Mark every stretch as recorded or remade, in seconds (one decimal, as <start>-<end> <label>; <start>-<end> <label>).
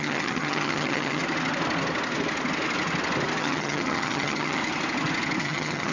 0.0-1.2 remade; 1.2-3.4 recorded; 3.4-4.6 remade; 4.6-5.4 recorded; 5.4-5.9 remade